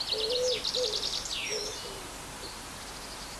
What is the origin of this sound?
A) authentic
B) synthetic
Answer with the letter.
A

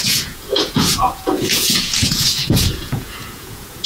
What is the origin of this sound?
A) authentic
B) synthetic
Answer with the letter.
B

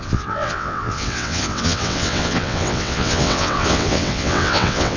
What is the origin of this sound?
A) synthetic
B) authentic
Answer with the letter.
A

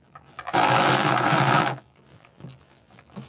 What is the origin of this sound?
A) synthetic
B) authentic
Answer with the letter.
A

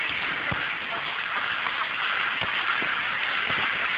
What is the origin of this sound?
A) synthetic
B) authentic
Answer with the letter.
B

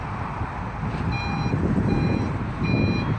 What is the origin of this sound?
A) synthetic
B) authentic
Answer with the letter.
B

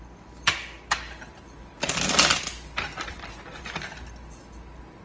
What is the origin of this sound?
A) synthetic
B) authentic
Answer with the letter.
B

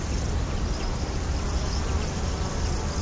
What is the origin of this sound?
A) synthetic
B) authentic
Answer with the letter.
B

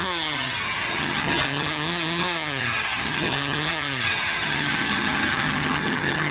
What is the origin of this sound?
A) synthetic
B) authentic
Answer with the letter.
A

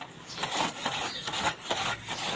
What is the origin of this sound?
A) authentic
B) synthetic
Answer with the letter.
B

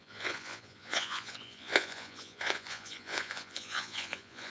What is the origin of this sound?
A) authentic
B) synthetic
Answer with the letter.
B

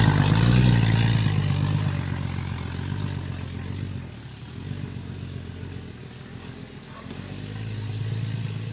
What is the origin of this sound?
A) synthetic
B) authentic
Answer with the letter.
B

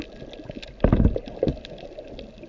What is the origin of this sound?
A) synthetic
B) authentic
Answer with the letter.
B